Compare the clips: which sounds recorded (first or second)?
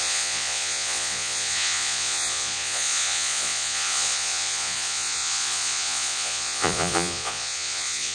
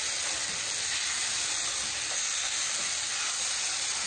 second